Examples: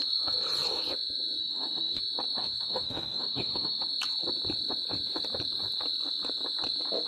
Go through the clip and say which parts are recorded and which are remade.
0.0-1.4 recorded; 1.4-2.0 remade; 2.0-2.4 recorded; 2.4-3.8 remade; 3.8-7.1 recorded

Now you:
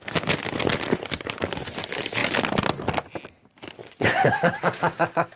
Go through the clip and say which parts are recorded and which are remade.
0.0-3.8 recorded; 3.8-5.0 remade; 5.0-5.4 recorded

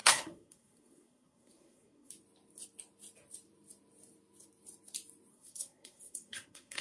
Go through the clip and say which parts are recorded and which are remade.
0.0-2.1 remade; 2.1-5.3 recorded; 5.3-6.8 remade